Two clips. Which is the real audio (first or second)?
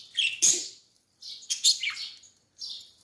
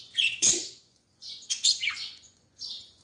first